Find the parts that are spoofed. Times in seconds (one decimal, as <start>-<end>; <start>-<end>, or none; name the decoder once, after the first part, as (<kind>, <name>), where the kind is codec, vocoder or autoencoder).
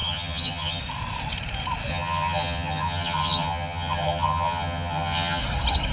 0.0-0.8 (vocoder, HiFi-GAN); 1.9-5.4